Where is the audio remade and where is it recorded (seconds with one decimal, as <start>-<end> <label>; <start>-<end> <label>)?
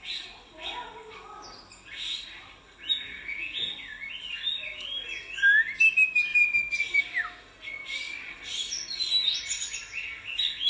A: 0.0-6.3 recorded; 6.3-7.0 remade; 7.0-10.7 recorded